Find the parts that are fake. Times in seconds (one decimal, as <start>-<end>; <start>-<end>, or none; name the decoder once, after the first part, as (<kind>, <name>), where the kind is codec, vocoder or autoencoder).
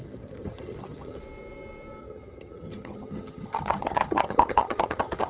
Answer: 0.0-1.2 (vocoder, HiFi-GAN); 2.0-5.3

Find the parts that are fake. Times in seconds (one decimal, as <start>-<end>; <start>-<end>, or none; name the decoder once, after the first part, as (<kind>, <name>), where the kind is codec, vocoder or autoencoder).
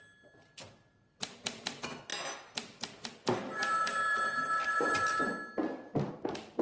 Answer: none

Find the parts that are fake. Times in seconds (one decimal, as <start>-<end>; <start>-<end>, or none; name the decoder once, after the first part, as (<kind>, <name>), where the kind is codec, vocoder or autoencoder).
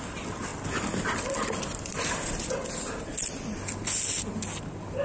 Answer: none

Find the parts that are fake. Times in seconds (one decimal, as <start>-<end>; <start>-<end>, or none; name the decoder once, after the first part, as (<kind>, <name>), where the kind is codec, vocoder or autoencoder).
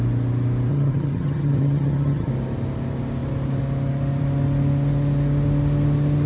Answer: 0.7-2.3 (vocoder, HiFi-GAN)